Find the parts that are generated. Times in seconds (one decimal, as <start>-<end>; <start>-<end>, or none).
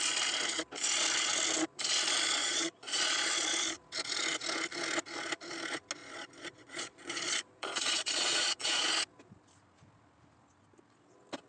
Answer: 2.4-3.0; 6.0-8.9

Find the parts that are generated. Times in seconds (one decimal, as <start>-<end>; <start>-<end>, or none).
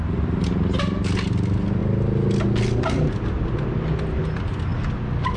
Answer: none